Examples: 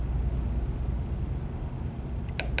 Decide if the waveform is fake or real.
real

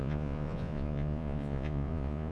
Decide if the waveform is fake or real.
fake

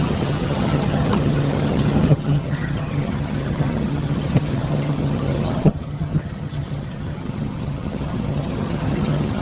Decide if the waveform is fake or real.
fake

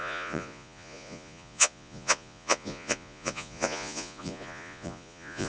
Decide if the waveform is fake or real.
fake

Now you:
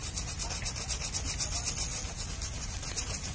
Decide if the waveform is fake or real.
real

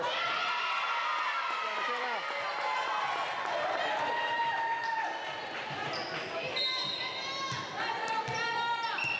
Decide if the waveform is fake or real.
real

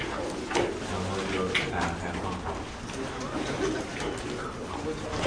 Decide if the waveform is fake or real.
real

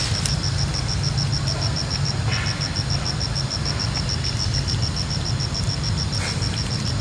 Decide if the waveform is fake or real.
real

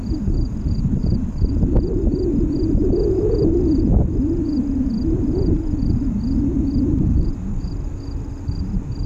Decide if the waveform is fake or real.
real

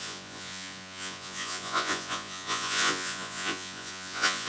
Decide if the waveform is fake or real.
fake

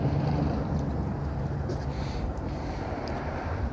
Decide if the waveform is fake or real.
fake